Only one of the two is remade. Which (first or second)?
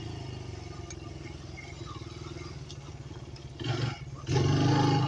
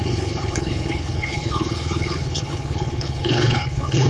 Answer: second